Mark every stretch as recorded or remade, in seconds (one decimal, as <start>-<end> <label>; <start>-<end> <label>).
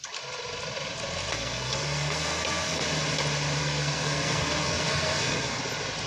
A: 0.0-1.3 recorded; 1.3-2.8 remade; 2.8-3.6 recorded; 3.6-5.6 remade; 5.6-6.1 recorded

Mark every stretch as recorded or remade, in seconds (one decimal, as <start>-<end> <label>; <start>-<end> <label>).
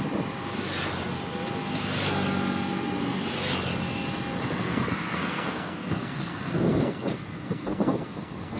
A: 0.0-4.6 recorded; 4.6-8.6 remade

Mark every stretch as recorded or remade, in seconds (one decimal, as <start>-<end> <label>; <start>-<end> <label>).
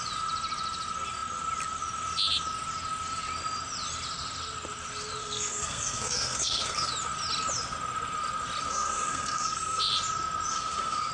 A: 0.0-5.2 recorded; 5.2-6.9 remade; 6.9-8.7 recorded; 8.7-9.8 remade; 9.8-10.5 recorded; 10.5-11.1 remade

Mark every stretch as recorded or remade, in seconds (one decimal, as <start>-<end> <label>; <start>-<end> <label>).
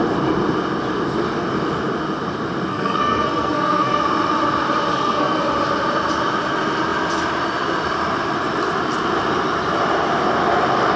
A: 0.0-2.7 recorded; 2.7-4.0 remade; 4.0-4.9 recorded; 4.9-5.4 remade; 5.4-11.0 recorded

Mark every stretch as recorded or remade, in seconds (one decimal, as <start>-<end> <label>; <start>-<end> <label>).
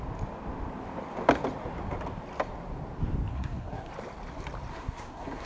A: 0.0-3.3 recorded; 3.3-3.9 remade; 3.9-4.7 recorded; 4.7-5.5 remade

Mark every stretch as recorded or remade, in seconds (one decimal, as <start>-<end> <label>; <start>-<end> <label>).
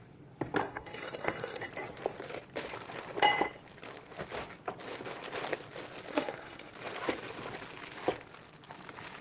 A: 0.0-0.6 recorded; 0.6-1.7 remade; 1.7-6.1 recorded; 6.1-6.7 remade; 6.7-9.2 recorded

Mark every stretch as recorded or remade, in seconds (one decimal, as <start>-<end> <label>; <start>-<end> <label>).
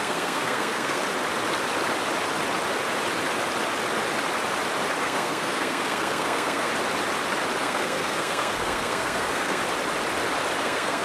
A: 0.0-1.0 remade; 1.0-5.0 recorded; 5.0-6.7 remade; 6.7-7.6 recorded; 7.6-9.6 remade; 9.6-10.6 recorded; 10.6-11.0 remade